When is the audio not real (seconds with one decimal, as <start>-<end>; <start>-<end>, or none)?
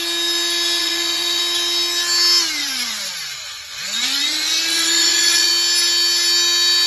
0.8-1.4; 2.6-5.5